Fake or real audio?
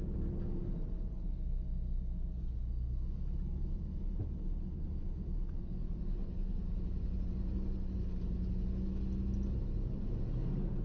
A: real